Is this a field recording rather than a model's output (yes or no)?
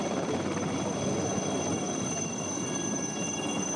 no